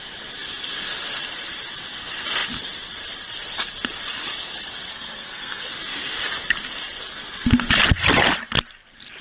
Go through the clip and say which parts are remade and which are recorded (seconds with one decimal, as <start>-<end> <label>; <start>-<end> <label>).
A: 0.0-4.9 recorded; 4.9-5.7 remade; 5.7-9.2 recorded